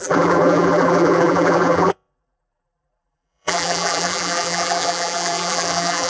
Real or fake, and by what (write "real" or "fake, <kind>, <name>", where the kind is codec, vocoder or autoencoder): fake, vocoder, BigVGAN v2